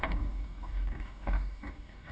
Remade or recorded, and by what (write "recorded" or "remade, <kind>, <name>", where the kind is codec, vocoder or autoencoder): remade, codec, DAC